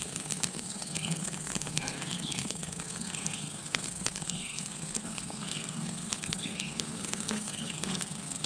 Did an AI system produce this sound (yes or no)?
yes